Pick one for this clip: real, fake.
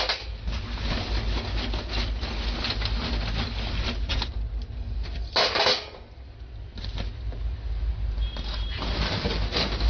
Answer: real